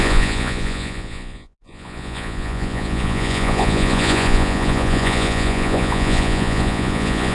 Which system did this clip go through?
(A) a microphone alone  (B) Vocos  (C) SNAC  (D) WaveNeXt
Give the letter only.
B